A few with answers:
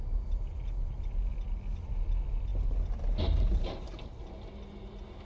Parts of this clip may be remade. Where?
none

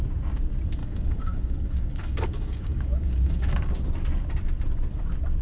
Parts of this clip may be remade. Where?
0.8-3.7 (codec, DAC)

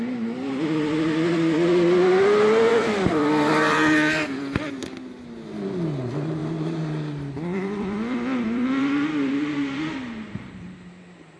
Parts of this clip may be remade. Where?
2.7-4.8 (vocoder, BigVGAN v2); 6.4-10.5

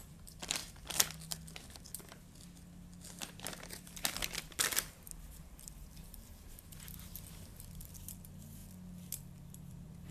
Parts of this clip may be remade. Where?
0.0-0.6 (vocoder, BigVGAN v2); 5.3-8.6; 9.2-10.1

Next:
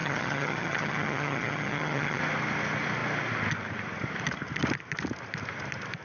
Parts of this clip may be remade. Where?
0.0-2.2 (vocoder, HiFi-GAN)

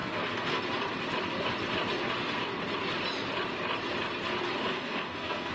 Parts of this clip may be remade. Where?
0.0-0.6 (codec, SNAC); 4.7-5.5